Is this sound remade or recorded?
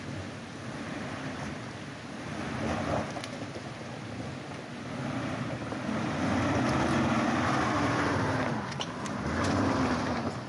recorded